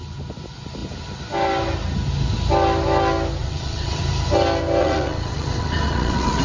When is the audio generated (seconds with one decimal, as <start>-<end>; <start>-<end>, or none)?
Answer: 3.4-4.0; 4.8-6.4